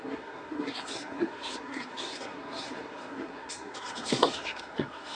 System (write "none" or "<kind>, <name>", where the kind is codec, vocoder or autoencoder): codec, SNAC